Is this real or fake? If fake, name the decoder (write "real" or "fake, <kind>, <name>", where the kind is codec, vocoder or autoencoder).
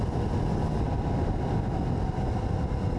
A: real